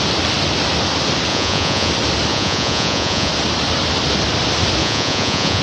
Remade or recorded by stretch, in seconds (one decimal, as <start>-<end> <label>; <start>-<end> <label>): 0.0-1.3 recorded; 1.3-1.9 remade; 1.9-2.3 recorded; 2.3-3.3 remade; 3.3-4.8 recorded; 4.8-5.6 remade